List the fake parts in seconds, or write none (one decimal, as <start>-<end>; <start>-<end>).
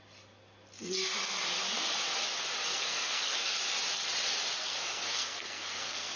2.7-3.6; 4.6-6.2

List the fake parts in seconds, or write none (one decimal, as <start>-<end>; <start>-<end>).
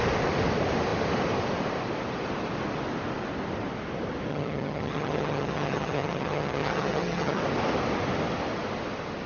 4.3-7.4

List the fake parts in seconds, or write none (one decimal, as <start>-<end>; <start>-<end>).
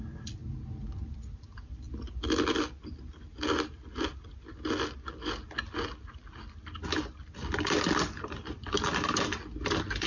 none